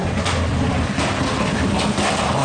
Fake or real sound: real